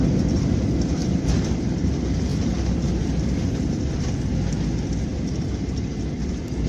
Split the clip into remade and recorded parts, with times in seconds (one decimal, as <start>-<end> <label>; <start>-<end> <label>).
0.0-1.0 recorded; 1.0-1.9 remade; 1.9-2.3 recorded; 2.3-4.1 remade; 4.1-6.7 recorded